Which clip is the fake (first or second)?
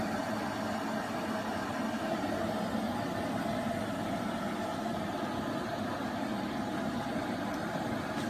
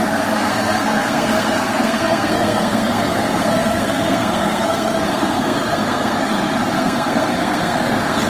second